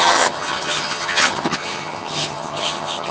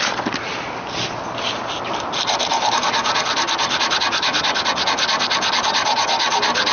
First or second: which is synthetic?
first